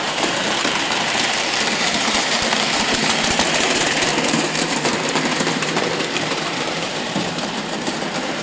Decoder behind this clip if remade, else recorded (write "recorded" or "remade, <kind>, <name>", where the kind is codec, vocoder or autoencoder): remade, vocoder, BigVGAN v2